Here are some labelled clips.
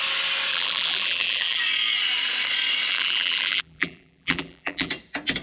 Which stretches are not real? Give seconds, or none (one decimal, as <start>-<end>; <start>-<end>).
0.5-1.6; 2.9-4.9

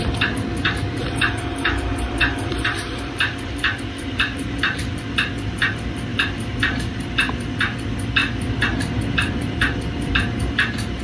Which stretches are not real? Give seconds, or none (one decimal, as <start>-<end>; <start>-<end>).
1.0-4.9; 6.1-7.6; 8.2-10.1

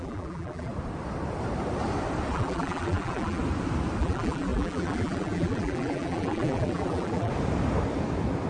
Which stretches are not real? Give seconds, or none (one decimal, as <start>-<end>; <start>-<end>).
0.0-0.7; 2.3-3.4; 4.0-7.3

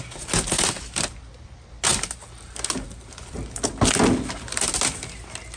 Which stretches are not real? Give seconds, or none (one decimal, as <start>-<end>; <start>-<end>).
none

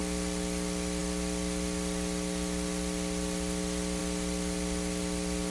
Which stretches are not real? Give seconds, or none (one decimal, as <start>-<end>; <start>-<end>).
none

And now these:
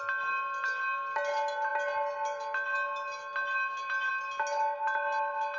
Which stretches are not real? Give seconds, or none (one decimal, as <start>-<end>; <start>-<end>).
none

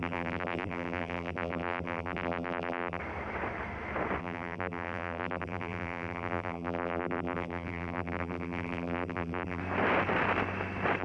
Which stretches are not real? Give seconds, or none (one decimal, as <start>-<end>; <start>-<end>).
0.0-3.0; 4.2-9.6

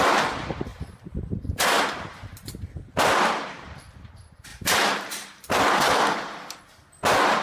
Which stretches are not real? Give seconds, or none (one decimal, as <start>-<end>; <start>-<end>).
0.7-3.8; 4.5-6.6